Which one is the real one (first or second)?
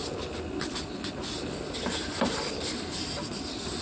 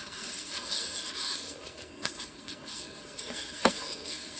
first